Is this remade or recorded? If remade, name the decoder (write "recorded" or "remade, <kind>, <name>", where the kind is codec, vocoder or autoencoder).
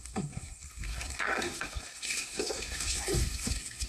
remade, codec, SNAC